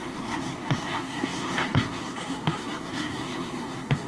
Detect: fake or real fake